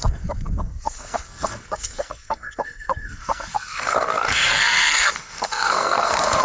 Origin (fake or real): fake